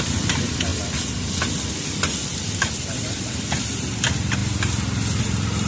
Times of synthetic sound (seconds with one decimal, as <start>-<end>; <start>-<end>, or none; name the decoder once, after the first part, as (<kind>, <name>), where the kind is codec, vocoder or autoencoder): 0.0-0.7 (vocoder, BigVGAN v2); 1.4-4.4; 5.2-5.7